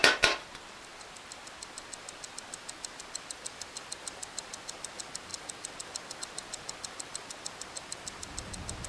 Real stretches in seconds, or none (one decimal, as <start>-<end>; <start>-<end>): 0.0-8.9